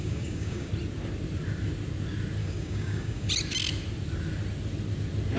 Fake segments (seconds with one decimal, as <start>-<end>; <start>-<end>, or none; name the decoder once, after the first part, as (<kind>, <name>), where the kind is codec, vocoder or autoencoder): 0.0-0.7 (codec, DAC); 2.4-3.3

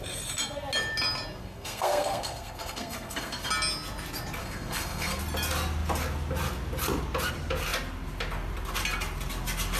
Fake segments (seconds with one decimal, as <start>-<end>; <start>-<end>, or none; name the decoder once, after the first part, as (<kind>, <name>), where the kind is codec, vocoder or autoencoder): 1.4-3.5 (codec, SNAC); 4.4-5.2